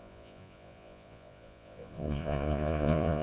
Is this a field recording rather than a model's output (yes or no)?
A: no